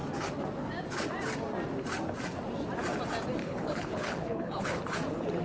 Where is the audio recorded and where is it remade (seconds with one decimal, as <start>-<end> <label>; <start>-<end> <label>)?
0.0-3.4 recorded; 3.4-4.8 remade; 4.8-5.4 recorded